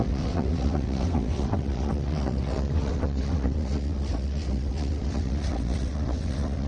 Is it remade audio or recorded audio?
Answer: remade